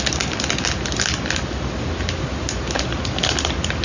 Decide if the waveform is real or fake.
real